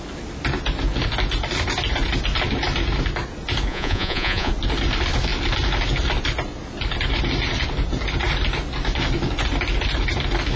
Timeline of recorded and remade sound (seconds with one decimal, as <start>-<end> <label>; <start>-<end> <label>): 0.0-3.7 recorded; 3.7-4.5 remade; 4.5-10.6 recorded